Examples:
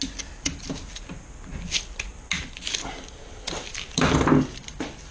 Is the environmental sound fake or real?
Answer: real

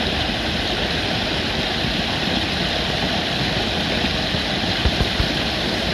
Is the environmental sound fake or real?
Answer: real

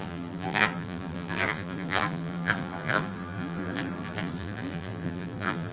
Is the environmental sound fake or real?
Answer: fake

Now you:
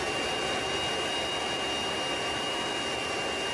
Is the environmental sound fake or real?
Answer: real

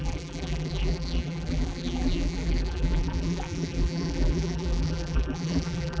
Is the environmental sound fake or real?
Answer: fake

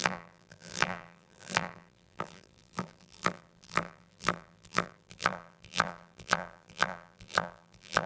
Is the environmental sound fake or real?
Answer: fake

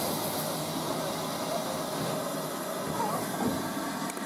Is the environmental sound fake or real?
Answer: real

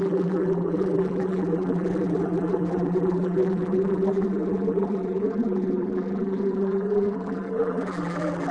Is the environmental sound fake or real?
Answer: fake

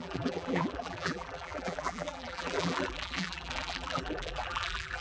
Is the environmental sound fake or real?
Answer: fake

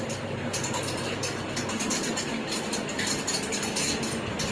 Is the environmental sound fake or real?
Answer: real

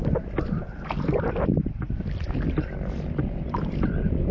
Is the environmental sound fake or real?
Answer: real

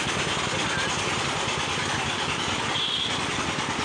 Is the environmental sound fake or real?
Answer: real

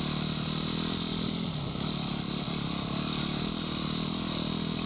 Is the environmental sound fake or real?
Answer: fake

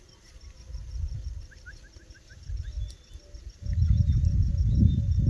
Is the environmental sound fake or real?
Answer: real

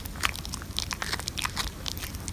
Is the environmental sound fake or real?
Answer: real